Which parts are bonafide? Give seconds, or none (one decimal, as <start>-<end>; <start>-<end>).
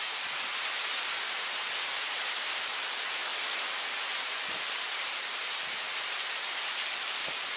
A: 0.0-7.6